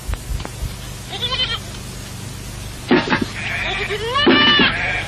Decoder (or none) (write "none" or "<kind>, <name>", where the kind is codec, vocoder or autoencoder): none